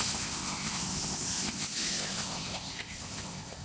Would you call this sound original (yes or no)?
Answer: no